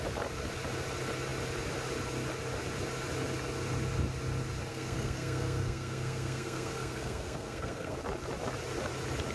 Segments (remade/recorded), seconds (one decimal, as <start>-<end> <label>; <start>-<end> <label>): 0.0-4.7 recorded; 4.7-8.0 remade; 8.0-9.3 recorded